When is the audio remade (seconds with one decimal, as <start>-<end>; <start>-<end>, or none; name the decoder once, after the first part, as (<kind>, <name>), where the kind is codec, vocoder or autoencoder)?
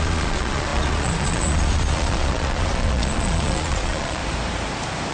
0.0-4.2 (vocoder, Vocos)